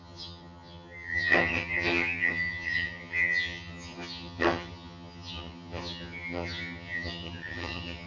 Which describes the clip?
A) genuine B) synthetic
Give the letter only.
B